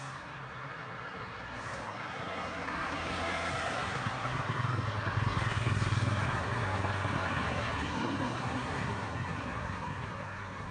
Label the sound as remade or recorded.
remade